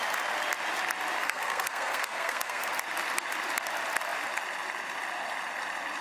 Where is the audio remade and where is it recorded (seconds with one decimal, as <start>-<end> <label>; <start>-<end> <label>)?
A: 0.0-1.2 recorded; 1.2-2.7 remade; 2.7-6.0 recorded